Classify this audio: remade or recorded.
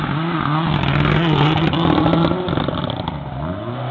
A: recorded